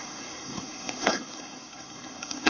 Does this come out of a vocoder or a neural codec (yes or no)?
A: yes